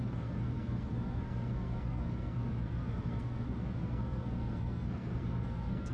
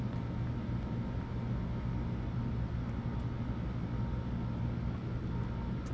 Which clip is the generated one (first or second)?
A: first